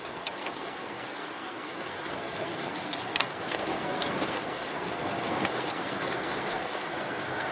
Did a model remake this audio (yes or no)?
yes